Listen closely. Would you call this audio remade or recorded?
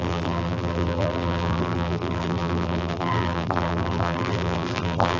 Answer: remade